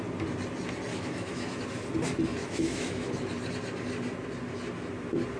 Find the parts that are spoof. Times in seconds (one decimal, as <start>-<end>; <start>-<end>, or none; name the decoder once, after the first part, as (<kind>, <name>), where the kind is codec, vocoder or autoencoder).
0.9-1.6 (autoencoder, DAC-VAE); 2.4-3.1